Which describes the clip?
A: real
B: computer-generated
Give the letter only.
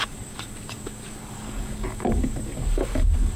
B